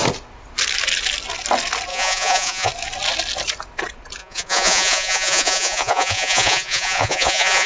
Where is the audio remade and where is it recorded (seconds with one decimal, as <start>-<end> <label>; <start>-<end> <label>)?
0.0-1.9 recorded; 1.9-2.7 remade; 2.7-4.2 recorded; 4.2-7.7 remade